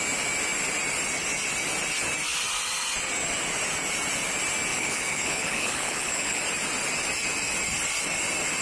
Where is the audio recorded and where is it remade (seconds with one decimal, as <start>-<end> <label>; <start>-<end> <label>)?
0.0-4.7 recorded; 4.7-6.4 remade; 6.4-8.6 recorded